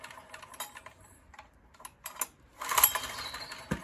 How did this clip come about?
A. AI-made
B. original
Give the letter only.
B